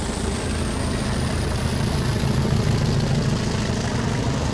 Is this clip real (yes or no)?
yes